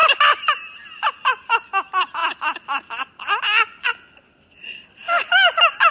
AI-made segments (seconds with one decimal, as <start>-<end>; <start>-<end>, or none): none